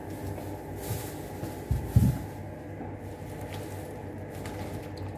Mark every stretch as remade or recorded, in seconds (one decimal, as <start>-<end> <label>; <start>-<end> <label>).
0.0-5.2 recorded